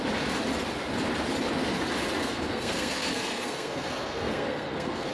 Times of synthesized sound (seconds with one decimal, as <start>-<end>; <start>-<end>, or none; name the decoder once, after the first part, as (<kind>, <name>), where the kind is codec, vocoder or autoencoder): 2.2-5.1 (codec, SNAC)